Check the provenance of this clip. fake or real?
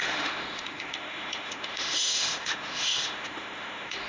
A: fake